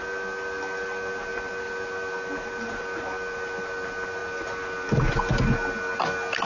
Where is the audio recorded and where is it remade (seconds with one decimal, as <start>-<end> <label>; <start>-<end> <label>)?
0.0-6.5 recorded